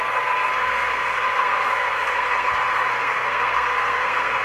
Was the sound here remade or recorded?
remade